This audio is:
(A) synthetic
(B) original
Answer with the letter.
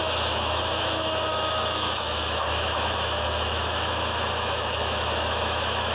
A